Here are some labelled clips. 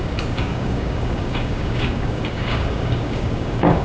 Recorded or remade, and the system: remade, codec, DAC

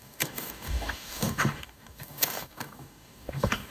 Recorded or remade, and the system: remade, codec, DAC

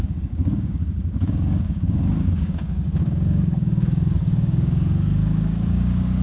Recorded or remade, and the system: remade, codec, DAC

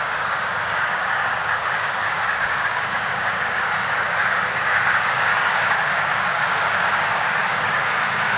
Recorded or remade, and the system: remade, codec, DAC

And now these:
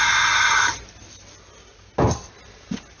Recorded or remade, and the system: recorded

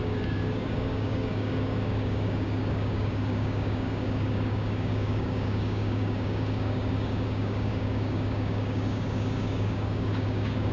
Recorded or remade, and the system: remade, codec, DAC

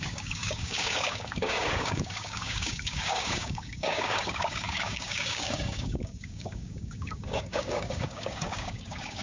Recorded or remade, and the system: remade, codec, DAC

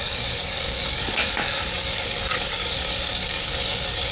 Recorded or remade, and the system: remade, codec, DAC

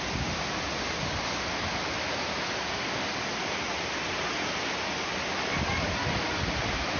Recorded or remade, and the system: recorded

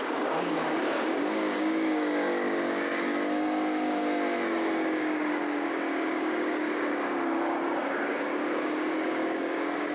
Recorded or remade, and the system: remade, codec, DAC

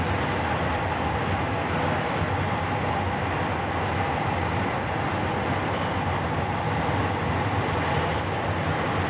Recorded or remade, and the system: recorded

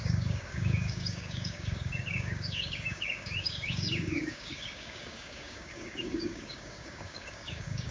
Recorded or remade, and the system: remade, codec, DAC